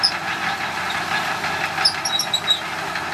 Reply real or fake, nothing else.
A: real